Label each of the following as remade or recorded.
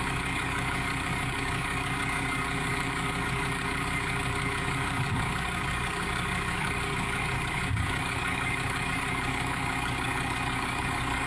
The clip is remade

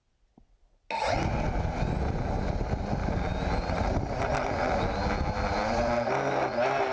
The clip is recorded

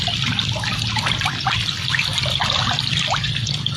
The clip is recorded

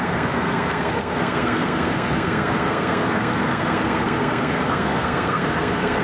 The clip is remade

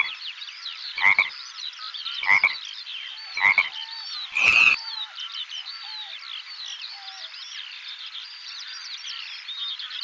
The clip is remade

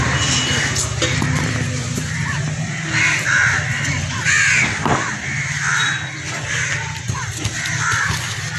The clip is recorded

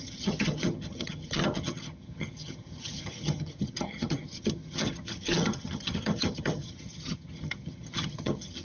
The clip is remade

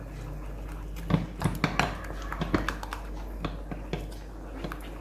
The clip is recorded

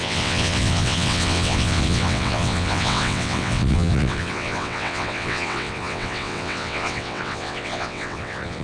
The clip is remade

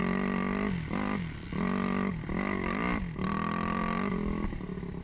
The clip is recorded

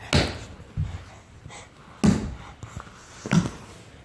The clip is recorded